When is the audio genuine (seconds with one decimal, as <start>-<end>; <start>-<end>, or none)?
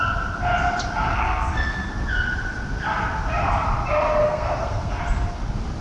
0.0-1.1; 1.9-4.2; 5.0-5.8